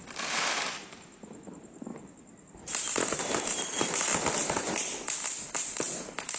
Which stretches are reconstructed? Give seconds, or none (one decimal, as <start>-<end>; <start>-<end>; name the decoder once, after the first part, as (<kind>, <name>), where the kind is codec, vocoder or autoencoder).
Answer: 0.0-1.9 (vocoder, BigVGAN v2); 3.2-6.4